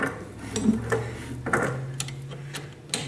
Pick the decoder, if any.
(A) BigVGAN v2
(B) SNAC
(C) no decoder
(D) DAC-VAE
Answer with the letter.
C